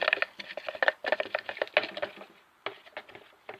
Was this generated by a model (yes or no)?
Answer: no